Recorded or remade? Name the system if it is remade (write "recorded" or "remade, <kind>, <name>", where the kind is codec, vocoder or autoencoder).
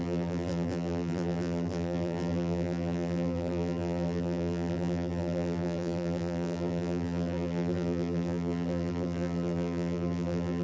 remade, vocoder, BigVGAN v2